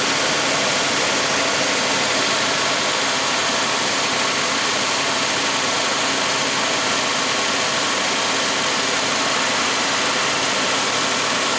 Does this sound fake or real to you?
real